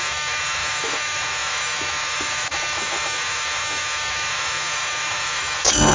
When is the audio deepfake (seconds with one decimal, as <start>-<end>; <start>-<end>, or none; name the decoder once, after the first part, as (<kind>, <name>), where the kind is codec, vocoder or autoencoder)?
0.0-5.9 (autoencoder, DAC-VAE)